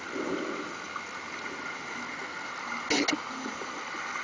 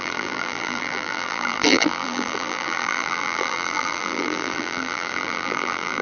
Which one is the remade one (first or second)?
second